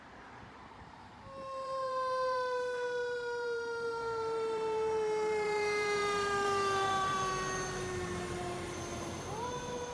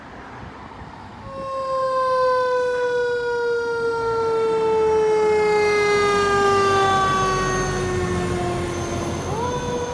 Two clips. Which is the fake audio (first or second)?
first